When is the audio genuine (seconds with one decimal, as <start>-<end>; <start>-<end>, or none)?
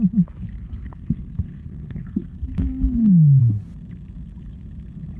0.0-0.5; 3.4-5.2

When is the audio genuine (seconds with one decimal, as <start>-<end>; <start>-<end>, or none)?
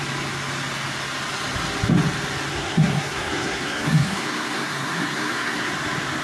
0.0-2.5; 5.7-6.2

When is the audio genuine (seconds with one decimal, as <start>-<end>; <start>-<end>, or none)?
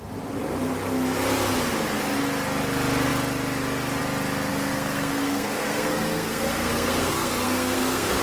0.0-4.5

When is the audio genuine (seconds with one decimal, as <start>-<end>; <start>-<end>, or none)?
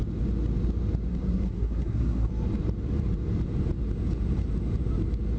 0.0-1.1; 2.3-5.4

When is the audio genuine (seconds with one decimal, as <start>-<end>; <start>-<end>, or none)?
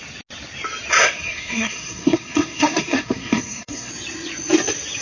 0.0-0.9; 3.9-5.0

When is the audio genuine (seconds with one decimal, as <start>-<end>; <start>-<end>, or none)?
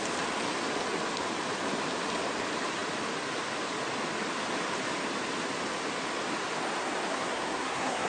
0.0-7.1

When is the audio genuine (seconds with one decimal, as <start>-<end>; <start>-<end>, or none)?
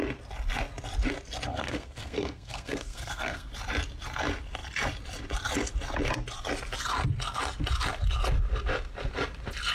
0.0-1.5; 3.5-9.7